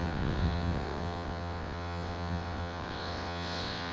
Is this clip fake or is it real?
fake